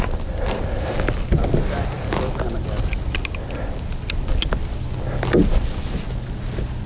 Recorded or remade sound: recorded